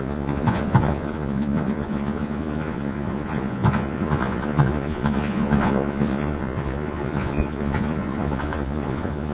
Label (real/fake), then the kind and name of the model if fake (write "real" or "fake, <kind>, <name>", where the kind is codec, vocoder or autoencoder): fake, vocoder, Vocos